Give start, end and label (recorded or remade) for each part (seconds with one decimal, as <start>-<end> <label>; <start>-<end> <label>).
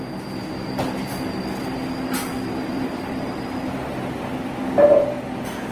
0.0-2.7 recorded; 2.7-4.6 remade; 4.6-5.7 recorded